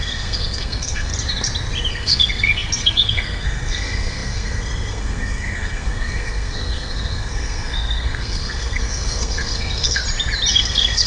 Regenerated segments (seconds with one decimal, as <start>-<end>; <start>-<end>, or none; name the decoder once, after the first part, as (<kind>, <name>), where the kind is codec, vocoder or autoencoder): 0.0-1.1 (codec, SNAC); 1.9-10.0; 10.5-11.1